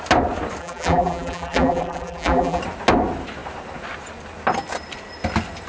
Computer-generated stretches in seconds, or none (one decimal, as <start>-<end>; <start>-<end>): 0.6-2.6